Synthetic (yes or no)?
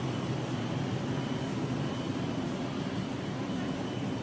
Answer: yes